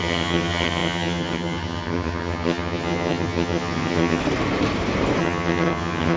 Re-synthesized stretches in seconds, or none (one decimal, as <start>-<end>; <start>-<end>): 0.0-4.2; 5.2-6.2